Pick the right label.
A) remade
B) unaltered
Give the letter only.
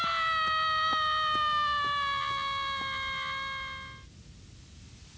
B